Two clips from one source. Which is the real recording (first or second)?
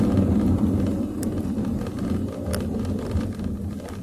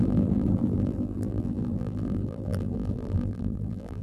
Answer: first